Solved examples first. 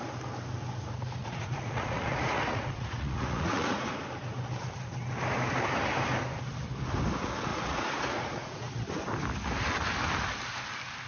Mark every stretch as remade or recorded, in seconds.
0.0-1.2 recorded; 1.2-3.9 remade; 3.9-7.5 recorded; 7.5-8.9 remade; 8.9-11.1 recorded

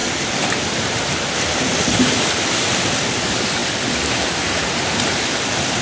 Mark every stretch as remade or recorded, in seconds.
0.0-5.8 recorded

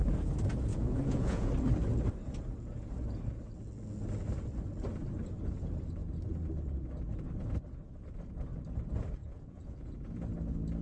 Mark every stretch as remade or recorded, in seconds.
0.0-0.7 recorded; 0.7-1.5 remade; 1.5-9.2 recorded; 9.2-9.9 remade; 9.9-10.8 recorded